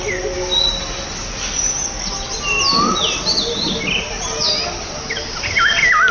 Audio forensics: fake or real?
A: real